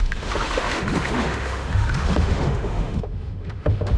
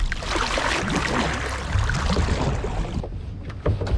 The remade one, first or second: first